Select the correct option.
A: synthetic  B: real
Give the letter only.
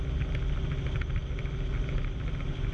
B